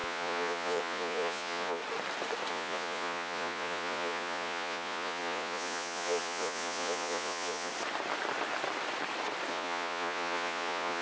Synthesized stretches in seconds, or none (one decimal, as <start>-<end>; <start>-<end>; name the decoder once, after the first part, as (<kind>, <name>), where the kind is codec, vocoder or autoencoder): 0.0-1.8 (vocoder, Vocos); 2.5-7.7; 9.5-11.0